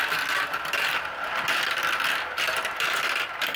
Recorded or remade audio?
recorded